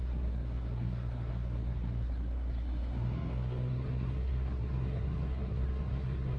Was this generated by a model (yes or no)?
yes